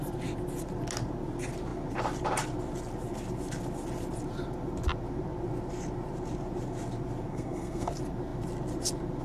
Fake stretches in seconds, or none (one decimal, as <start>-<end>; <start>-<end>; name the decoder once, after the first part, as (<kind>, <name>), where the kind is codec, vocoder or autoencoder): 7.3-7.9 (codec, SNAC)